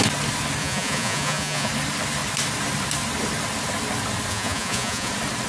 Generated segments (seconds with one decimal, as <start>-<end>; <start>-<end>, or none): 0.6-1.7; 4.3-5.1